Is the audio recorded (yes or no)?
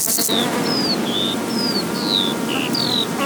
yes